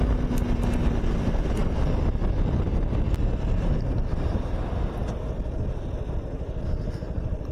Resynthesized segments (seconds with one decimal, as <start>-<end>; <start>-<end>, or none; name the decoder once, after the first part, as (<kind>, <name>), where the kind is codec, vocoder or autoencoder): 1.6-3.9 (vocoder, BigVGAN v2)

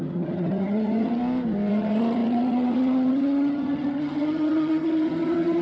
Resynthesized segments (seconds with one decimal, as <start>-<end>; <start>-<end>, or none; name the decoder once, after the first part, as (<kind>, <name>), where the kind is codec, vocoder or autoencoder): 0.0-1.2 (vocoder, HiFi-GAN); 1.7-5.6

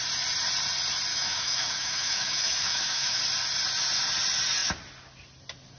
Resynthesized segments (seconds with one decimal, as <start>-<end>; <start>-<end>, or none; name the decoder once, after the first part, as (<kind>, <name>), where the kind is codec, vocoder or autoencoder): 1.1-3.2 (autoencoder, DAC-VAE)

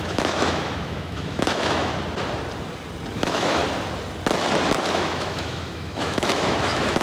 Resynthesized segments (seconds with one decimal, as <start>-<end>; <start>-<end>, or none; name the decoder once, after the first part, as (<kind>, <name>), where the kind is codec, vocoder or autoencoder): 0.0-1.9 (autoencoder, DAC-VAE); 3.1-3.6; 4.9-7.0

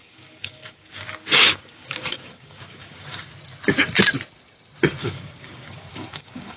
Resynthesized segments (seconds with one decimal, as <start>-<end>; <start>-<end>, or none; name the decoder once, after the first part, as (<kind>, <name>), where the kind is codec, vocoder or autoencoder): 0.0-3.3 (codec, DAC); 5.0-6.6

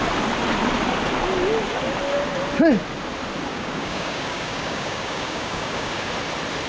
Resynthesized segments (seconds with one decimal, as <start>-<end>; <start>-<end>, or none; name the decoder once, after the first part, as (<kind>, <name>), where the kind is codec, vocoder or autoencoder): 3.5-6.1 (codec, DAC)

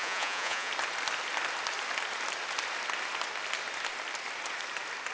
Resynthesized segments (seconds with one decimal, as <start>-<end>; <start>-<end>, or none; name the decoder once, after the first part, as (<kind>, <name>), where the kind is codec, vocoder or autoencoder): 0.0-0.7 (vocoder, Vocos)

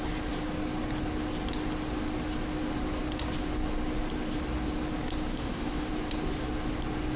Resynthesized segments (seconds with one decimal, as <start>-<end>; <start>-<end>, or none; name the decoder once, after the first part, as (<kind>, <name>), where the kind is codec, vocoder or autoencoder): 5.3-5.9 (autoencoder, DAC-VAE)